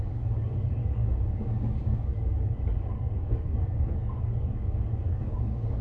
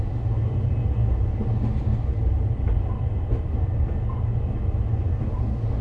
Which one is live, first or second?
second